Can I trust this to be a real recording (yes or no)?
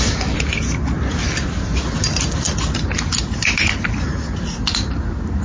yes